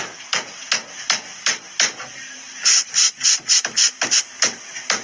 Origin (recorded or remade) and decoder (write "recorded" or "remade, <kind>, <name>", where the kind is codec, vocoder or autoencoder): recorded